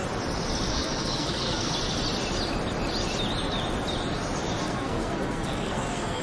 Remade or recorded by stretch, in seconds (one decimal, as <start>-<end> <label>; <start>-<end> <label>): 0.0-0.7 recorded; 0.7-1.7 remade; 1.7-4.6 recorded; 4.6-6.2 remade

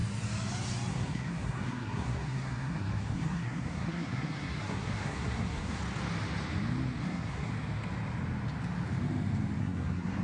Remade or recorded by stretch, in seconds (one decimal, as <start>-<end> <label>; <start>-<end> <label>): 0.0-0.9 recorded; 0.9-5.8 remade; 5.8-7.0 recorded; 7.0-7.5 remade; 7.5-9.6 recorded; 9.6-10.2 remade

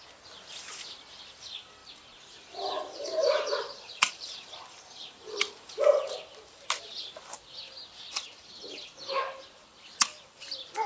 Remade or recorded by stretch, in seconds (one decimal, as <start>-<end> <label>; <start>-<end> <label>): 0.0-1.8 recorded; 1.8-5.4 remade; 5.4-10.9 recorded

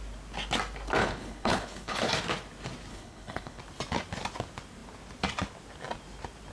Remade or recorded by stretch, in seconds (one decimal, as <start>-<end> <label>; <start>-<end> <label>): 0.0-1.0 recorded; 1.0-2.1 remade; 2.1-2.9 recorded; 2.9-3.6 remade; 3.6-6.5 recorded

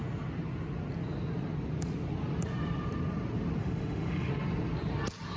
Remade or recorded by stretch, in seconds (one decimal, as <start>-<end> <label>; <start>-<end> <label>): 0.0-3.6 recorded; 3.6-4.3 remade; 4.3-5.4 recorded

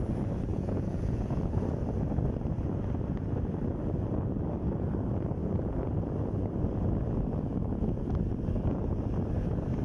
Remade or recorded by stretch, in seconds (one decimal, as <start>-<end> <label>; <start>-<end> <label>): 0.0-0.5 recorded; 0.5-1.5 remade; 1.5-5.4 recorded; 5.4-6.1 remade; 6.1-7.5 recorded; 7.5-8.0 remade; 8.0-9.8 recorded

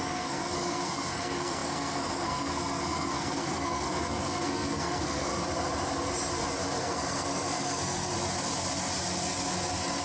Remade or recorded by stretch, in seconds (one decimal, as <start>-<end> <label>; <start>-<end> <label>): 0.0-5.3 remade; 5.3-6.8 recorded; 6.8-8.1 remade; 8.1-10.0 recorded

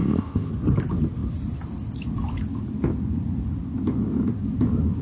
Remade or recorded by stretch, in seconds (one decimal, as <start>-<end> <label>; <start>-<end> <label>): 0.0-0.5 remade; 0.5-5.0 recorded